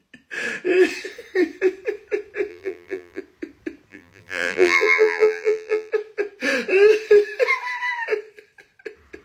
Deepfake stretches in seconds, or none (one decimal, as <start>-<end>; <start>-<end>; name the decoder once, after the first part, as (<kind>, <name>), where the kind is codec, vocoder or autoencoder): 2.5-3.2 (vocoder, BigVGAN v2); 3.9-5.9